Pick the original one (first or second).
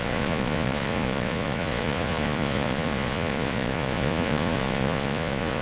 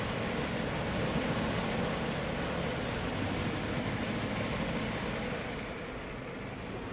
second